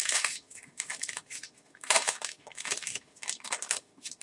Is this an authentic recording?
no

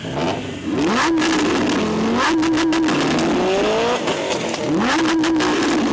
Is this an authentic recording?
yes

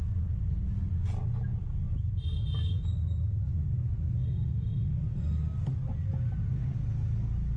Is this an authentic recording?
yes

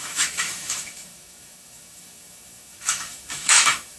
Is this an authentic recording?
no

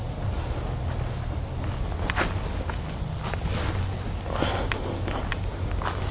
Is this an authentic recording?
yes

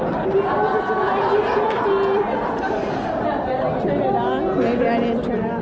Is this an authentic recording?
yes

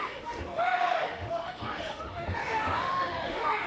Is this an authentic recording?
no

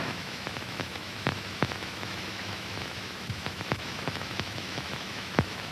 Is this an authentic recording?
no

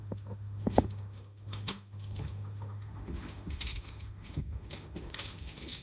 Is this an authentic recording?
no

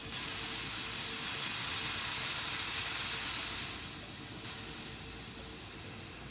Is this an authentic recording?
yes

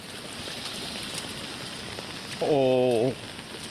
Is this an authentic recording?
yes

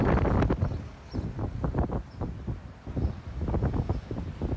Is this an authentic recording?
yes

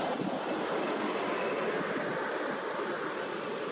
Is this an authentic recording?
yes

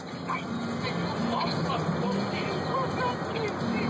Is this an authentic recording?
yes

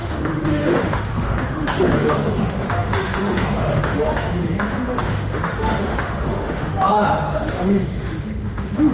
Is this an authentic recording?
no